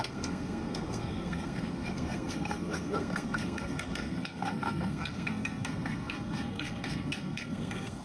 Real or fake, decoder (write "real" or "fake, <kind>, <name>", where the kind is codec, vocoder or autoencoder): fake, codec, SNAC